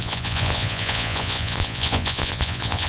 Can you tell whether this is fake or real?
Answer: fake